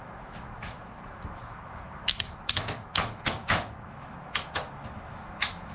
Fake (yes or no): yes